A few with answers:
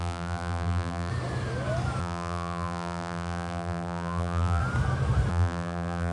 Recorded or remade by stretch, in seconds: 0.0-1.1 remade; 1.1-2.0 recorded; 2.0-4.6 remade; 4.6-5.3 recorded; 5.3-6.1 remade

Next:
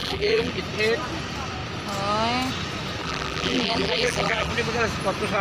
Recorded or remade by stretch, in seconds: 0.0-0.5 remade; 0.5-3.0 recorded; 3.0-4.5 remade; 4.5-5.4 recorded

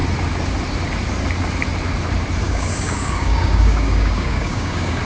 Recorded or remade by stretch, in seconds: 0.0-2.4 recorded; 2.4-5.0 remade